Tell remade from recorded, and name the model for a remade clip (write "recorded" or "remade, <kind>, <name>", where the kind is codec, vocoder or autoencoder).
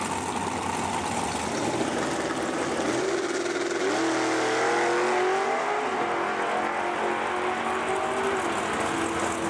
recorded